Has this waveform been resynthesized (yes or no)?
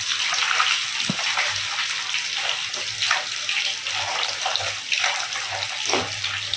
no